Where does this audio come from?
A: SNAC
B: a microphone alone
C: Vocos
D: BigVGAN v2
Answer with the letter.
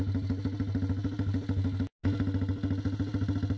B